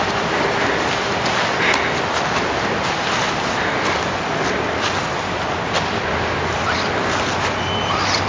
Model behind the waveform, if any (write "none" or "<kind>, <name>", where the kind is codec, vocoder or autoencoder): none